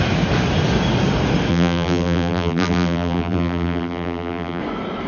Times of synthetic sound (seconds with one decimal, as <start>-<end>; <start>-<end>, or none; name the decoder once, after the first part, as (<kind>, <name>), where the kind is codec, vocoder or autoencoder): 1.5-4.6 (vocoder, BigVGAN v2)